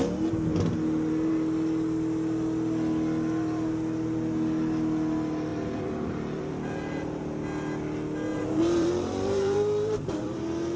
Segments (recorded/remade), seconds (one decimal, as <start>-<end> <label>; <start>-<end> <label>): 0.0-5.5 recorded; 5.5-7.2 remade; 7.2-8.3 recorded; 8.3-10.4 remade; 10.4-10.8 recorded